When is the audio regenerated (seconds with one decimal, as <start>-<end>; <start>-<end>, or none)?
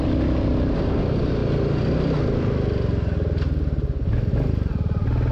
none